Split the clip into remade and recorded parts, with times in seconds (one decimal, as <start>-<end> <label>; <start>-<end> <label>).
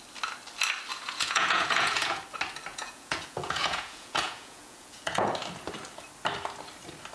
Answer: 0.0-0.9 recorded; 0.9-2.2 remade; 2.2-2.7 recorded; 2.7-5.3 remade; 5.3-7.1 recorded